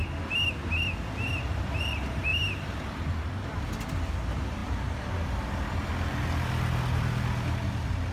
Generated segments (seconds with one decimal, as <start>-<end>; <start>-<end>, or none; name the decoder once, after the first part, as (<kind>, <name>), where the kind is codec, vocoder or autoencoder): none